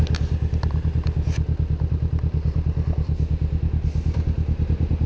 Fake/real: real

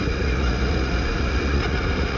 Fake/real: fake